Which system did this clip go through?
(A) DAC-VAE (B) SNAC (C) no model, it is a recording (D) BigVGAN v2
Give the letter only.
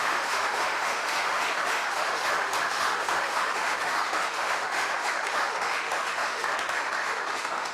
A